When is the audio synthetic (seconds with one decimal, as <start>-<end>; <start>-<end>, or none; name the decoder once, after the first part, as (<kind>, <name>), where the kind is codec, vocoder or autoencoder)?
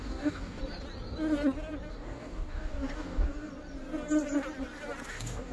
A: 0.0-0.6 (codec, DAC); 1.9-3.5; 5.1-5.5